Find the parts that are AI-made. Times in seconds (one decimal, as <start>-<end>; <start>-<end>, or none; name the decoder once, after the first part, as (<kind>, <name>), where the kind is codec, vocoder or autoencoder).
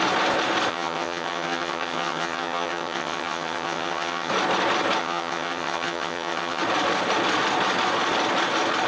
0.7-4.3 (vocoder, HiFi-GAN); 5.0-6.6